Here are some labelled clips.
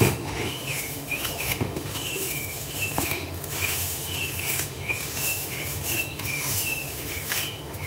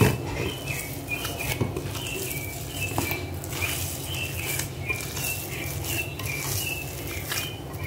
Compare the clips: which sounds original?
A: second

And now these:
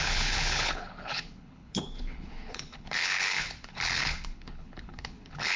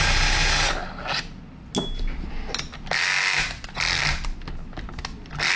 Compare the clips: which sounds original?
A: second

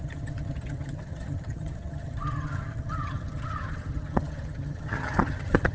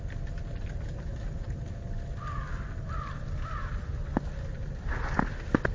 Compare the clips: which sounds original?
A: second